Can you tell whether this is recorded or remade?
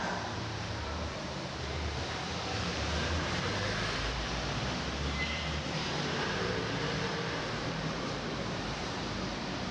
remade